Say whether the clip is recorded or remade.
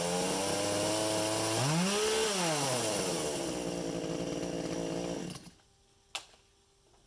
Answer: recorded